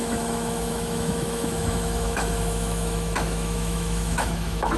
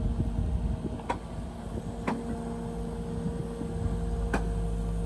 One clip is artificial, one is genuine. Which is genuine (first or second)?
second